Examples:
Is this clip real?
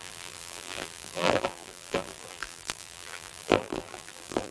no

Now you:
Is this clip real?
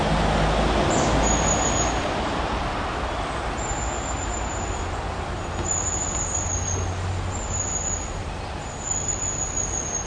yes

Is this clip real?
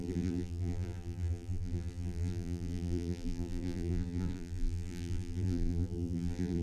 no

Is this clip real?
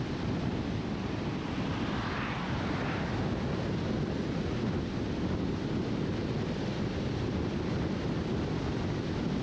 yes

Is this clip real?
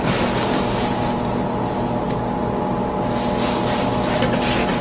yes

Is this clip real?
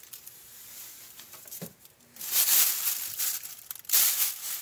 yes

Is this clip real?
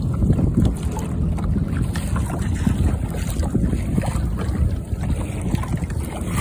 yes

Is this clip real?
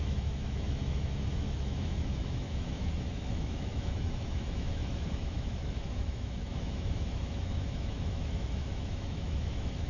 no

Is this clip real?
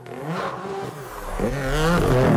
yes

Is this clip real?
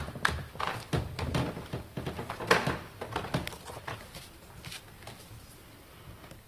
yes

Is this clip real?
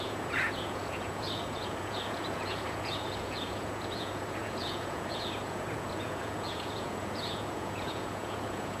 no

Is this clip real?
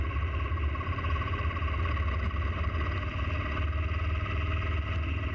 yes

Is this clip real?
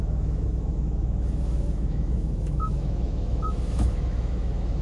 no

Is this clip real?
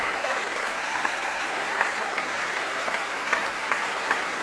no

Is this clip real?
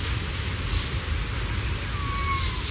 yes